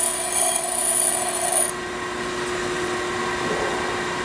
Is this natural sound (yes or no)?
yes